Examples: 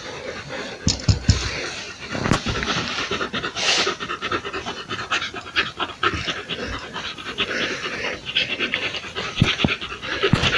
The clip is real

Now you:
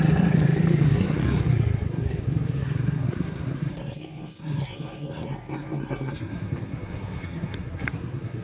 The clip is fake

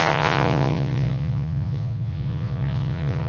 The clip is fake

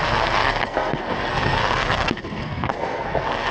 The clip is fake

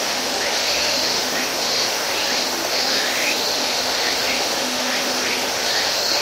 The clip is fake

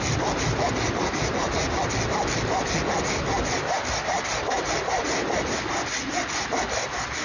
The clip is real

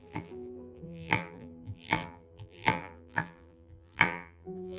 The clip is fake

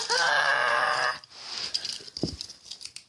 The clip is real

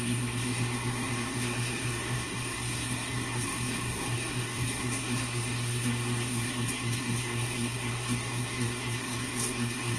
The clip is fake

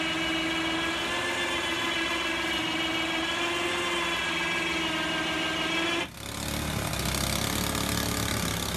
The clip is real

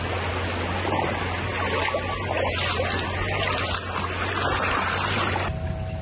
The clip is real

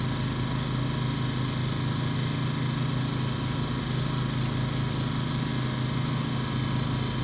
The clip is real